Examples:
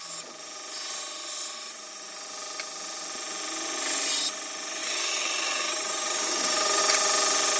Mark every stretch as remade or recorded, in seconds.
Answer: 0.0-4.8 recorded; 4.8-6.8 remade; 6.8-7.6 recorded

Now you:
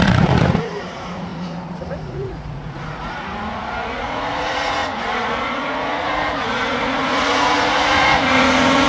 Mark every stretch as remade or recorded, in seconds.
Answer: 0.0-8.9 remade

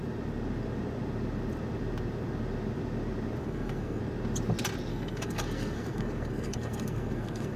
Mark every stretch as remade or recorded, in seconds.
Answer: 0.0-3.4 recorded; 3.4-4.0 remade; 4.0-4.9 recorded; 4.9-7.6 remade